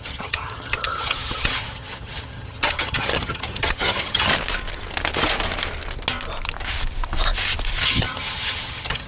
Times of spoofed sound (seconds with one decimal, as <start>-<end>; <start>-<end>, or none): 0.0-4.3; 7.8-9.1